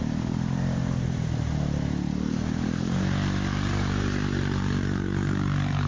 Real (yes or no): no